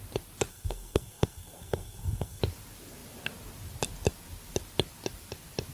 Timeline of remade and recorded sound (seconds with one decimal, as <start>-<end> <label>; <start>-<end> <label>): 0.0-0.5 recorded; 0.5-2.4 remade; 2.4-5.7 recorded